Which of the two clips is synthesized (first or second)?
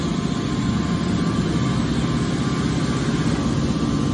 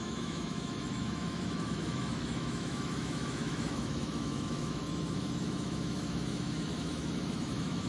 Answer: second